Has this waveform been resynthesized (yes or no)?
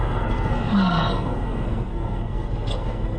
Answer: yes